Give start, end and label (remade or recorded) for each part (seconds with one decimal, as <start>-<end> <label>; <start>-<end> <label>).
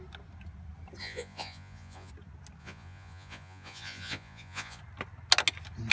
0.0-1.0 recorded; 1.0-2.1 remade; 2.1-2.6 recorded; 2.6-4.8 remade; 4.8-5.9 recorded